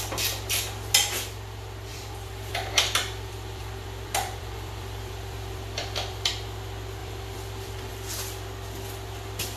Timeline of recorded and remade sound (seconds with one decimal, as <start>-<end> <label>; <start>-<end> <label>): 0.0-1.9 recorded; 1.9-6.3 remade; 6.3-7.0 recorded; 7.0-7.9 remade; 7.9-9.6 recorded